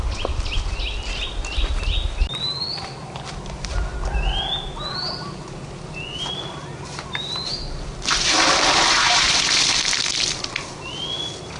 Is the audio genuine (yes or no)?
yes